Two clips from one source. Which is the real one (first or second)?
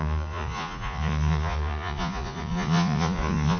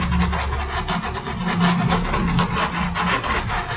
second